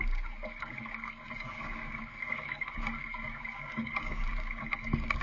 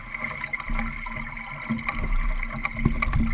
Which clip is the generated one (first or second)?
first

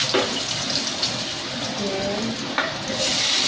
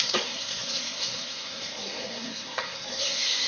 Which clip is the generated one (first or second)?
second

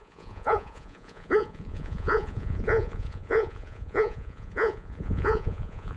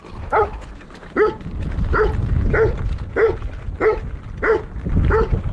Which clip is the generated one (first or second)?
first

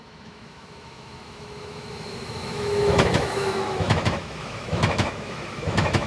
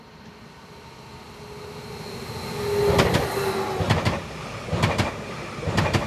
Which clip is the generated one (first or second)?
first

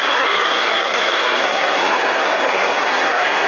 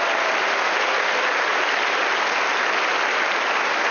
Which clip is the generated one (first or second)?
first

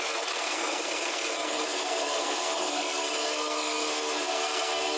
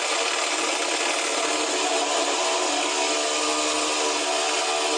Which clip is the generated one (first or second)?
first